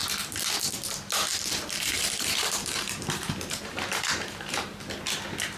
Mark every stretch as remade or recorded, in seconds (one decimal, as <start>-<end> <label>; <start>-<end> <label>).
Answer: 0.0-1.3 recorded; 1.3-4.7 remade; 4.7-5.6 recorded